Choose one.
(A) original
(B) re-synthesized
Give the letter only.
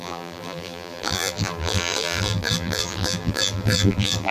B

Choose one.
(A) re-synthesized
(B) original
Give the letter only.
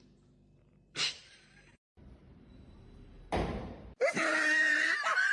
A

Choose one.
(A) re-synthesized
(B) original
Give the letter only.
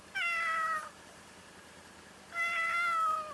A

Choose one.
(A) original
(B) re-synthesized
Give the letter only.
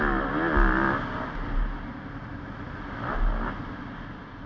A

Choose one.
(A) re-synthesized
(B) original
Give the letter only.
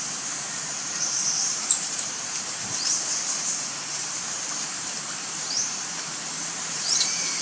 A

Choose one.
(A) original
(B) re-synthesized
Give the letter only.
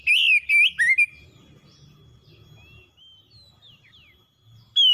A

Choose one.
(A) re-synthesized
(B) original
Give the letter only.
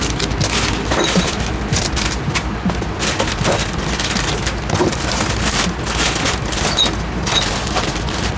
B